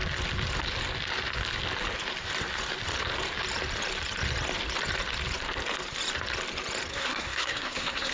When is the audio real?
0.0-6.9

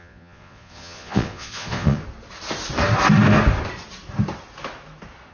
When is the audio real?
2.0-5.3

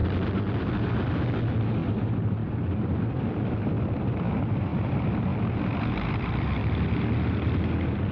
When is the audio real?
0.0-1.6

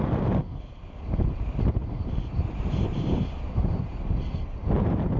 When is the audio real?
0.0-1.8; 3.9-4.6